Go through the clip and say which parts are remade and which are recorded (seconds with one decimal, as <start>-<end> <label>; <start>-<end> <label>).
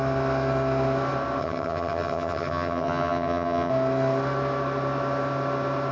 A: 0.0-1.4 recorded; 1.4-3.7 remade; 3.7-5.9 recorded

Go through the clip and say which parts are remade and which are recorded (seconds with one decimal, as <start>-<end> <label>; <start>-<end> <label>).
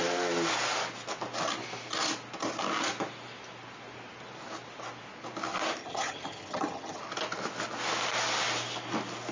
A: 0.0-5.8 recorded; 5.8-7.0 remade; 7.0-9.3 recorded